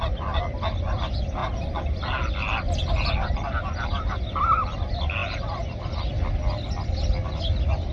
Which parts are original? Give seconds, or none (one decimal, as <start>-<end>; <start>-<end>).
0.0-7.9